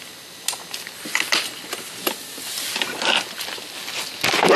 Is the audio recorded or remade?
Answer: recorded